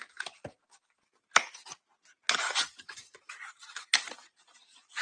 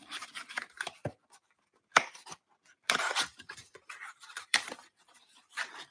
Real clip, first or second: first